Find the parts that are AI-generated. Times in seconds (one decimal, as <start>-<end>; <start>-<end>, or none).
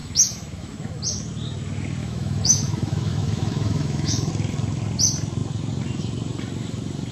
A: 0.0-1.0; 2.0-4.3